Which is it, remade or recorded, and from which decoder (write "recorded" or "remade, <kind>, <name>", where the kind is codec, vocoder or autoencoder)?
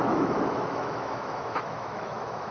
remade, autoencoder, DAC-VAE